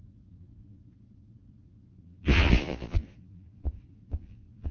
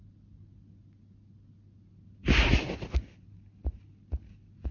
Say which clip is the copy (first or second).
first